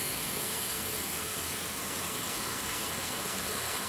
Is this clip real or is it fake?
fake